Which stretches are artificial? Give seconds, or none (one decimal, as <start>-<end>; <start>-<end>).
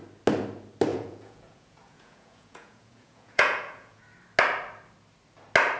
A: 0.9-4.0